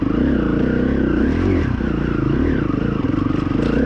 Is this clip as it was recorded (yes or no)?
yes